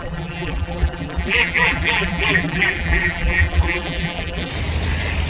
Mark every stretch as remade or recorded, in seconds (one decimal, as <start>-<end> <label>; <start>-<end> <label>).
0.0-4.5 remade; 4.5-5.3 recorded